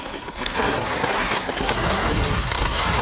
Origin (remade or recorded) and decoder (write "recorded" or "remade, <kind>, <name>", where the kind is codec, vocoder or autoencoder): remade, codec, SNAC